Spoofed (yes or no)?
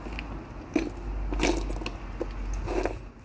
no